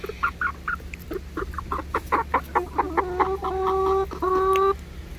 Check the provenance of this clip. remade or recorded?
recorded